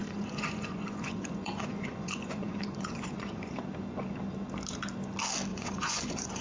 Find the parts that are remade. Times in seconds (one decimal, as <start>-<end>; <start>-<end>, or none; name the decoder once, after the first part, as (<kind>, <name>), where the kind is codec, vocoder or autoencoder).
0.0-3.5 (vocoder, Vocos); 5.5-6.4